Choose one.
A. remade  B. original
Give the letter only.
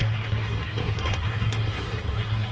A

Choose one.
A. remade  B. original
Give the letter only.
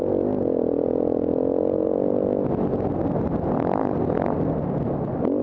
B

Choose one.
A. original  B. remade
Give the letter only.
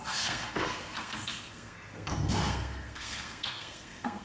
B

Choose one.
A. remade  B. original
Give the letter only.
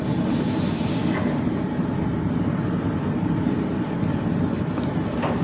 B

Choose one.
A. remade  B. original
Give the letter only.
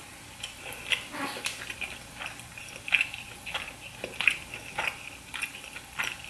B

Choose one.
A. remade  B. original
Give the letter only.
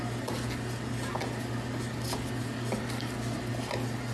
B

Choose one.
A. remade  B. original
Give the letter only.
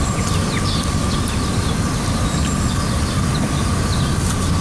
B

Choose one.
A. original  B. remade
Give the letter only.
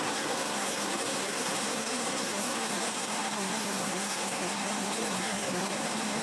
B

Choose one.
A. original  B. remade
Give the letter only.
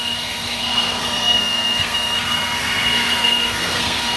B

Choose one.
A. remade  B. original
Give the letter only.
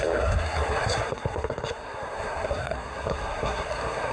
A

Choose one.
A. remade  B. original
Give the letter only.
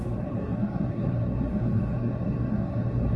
A